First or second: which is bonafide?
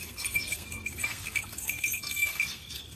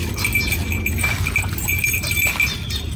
second